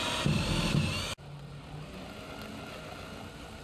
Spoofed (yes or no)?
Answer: no